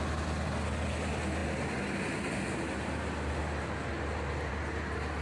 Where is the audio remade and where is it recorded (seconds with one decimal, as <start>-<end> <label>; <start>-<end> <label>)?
0.0-5.2 recorded